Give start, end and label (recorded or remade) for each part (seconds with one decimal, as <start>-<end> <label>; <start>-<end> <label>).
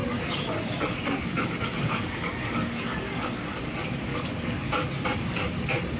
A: 0.0-3.6 remade; 3.6-4.1 recorded; 4.1-4.7 remade; 4.7-6.0 recorded